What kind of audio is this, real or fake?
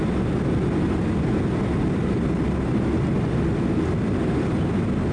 real